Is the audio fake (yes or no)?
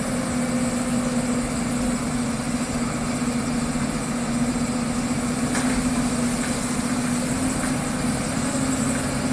no